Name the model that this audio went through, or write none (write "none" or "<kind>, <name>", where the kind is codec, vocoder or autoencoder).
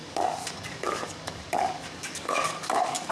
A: codec, DAC